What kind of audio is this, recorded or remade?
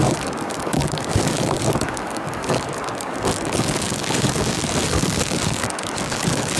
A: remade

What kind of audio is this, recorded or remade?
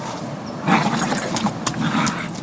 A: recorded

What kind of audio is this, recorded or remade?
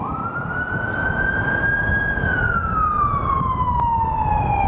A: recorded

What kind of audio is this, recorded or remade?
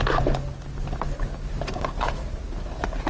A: recorded